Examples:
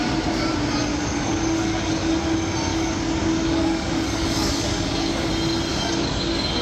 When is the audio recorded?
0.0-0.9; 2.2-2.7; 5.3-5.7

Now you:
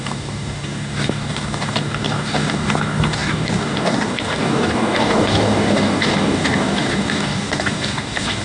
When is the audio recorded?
none

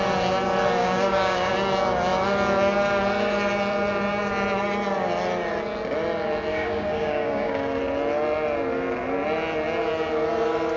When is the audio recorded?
0.0-0.8; 1.5-6.5; 7.8-10.8

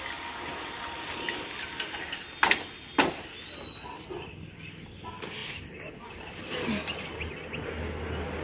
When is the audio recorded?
0.0-8.4

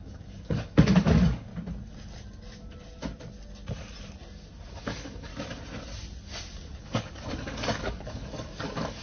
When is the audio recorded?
1.5-4.7; 5.3-6.8